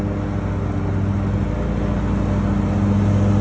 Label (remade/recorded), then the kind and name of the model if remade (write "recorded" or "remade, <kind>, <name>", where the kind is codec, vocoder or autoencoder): recorded